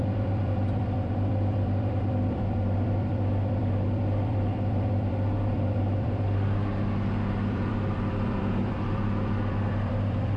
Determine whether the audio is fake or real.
fake